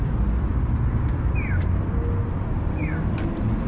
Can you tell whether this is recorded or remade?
recorded